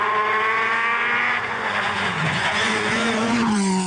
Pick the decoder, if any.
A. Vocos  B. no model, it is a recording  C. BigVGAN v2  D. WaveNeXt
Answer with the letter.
A